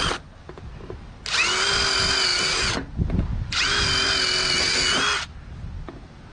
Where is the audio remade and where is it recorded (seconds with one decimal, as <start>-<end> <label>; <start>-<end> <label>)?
0.0-6.3 recorded